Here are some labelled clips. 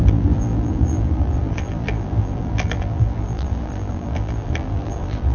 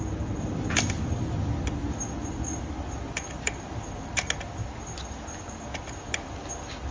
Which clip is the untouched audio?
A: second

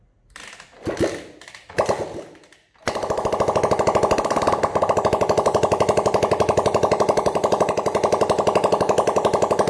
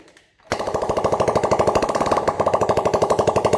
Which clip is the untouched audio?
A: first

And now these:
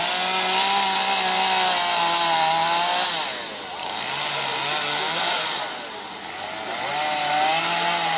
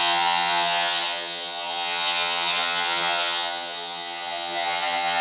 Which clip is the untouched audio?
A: first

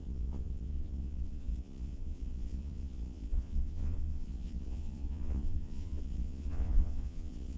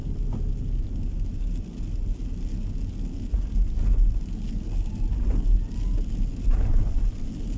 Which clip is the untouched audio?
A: second